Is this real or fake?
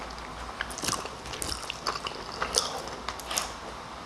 real